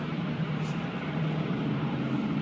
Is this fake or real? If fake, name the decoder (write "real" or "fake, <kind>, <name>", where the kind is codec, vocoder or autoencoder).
fake, vocoder, BigVGAN v2